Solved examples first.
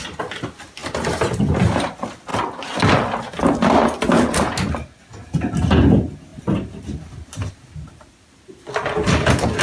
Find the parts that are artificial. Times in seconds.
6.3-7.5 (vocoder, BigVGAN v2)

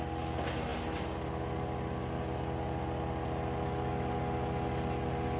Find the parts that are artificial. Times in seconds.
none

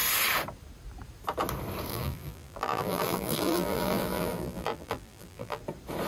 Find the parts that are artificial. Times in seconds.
1.9-5.6 (vocoder, BigVGAN v2)

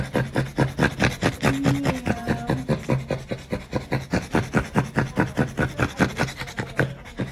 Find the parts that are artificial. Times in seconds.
4.1-4.8 (vocoder, BigVGAN v2)

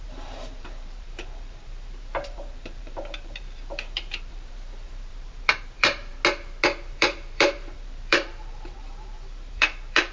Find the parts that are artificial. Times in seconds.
0.0-6.1 (vocoder, BigVGAN v2); 6.9-10.1

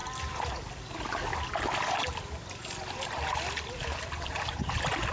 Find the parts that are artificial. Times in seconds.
none

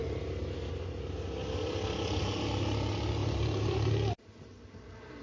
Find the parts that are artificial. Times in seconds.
3.2-3.9 (vocoder, BigVGAN v2)

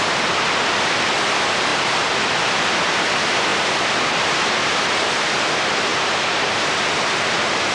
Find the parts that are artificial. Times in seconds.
1.7-2.7 (vocoder, BigVGAN v2); 3.5-4.1